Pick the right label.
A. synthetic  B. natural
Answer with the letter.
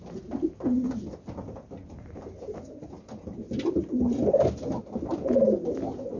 B